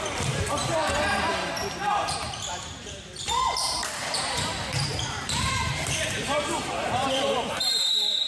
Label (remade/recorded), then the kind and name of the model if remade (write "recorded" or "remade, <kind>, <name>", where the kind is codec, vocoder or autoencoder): remade, vocoder, BigVGAN v2